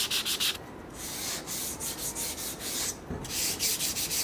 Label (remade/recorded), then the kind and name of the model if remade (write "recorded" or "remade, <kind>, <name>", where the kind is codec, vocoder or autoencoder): recorded